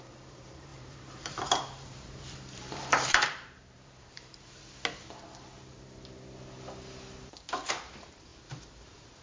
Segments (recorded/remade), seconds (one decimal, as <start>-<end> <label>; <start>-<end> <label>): 0.0-4.6 remade; 4.6-7.7 recorded; 7.7-8.3 remade; 8.3-9.2 recorded